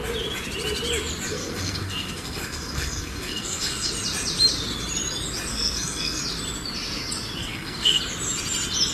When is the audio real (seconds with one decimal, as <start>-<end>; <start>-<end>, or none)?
0.0-1.3; 3.9-5.5; 6.2-7.4; 8.0-8.9